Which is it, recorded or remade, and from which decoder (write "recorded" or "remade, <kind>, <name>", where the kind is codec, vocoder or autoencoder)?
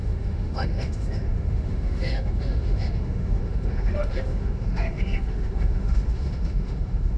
remade, autoencoder, DAC-VAE